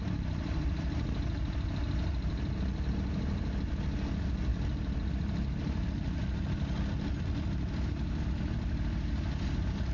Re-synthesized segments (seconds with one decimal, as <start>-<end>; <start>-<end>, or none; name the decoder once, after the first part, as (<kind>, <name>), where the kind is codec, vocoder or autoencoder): none